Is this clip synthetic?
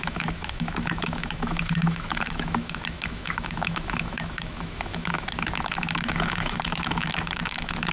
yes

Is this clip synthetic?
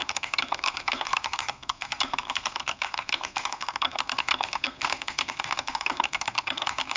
yes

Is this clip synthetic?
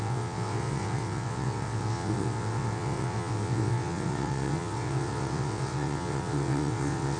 yes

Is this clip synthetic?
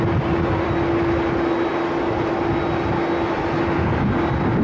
no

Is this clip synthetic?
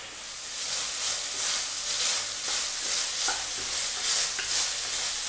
no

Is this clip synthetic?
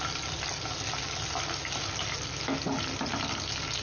no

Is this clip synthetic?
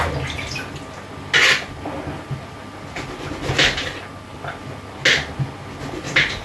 no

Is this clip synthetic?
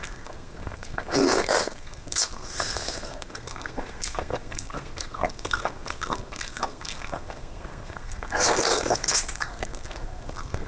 yes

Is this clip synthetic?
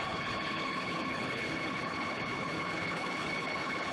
yes